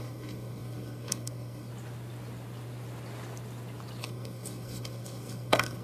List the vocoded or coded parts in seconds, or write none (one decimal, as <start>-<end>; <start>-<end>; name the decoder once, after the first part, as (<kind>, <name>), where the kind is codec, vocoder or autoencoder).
0.0-1.7 (codec, SNAC); 4.0-5.8